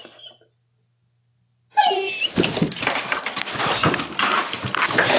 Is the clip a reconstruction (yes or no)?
no